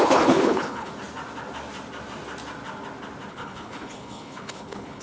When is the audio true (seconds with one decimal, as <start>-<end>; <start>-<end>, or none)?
0.9-3.3